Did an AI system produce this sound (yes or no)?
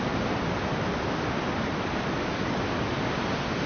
no